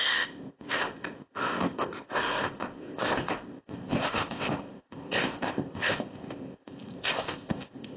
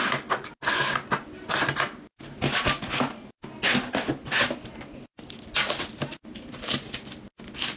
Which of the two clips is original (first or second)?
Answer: second